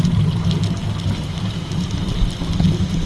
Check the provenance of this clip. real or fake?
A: real